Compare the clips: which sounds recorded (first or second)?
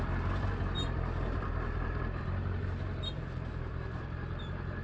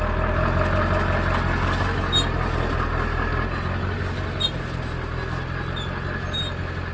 second